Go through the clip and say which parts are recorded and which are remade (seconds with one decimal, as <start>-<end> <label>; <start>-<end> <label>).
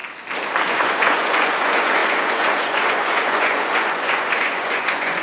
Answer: 0.0-0.7 recorded; 0.7-5.2 remade